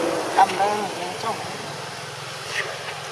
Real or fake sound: real